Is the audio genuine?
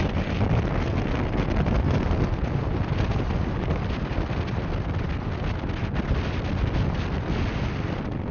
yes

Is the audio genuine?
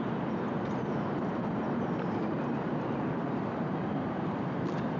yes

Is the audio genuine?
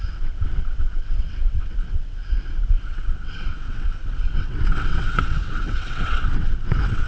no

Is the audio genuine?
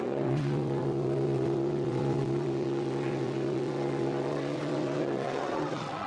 no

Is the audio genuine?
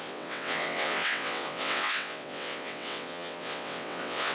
no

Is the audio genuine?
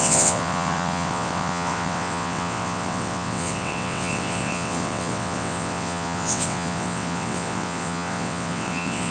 no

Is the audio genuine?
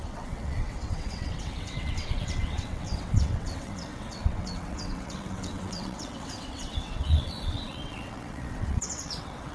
no